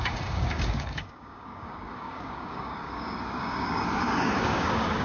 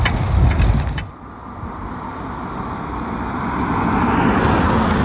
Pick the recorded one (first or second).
second